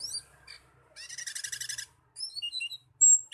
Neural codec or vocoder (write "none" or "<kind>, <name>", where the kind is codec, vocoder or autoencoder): none